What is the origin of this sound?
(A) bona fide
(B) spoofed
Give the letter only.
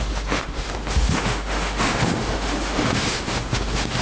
B